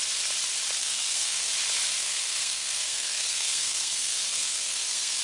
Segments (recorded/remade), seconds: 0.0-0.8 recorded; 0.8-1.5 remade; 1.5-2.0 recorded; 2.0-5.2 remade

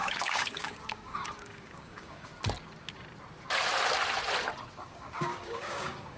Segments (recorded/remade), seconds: 0.0-2.3 remade; 2.3-4.7 recorded; 4.7-6.2 remade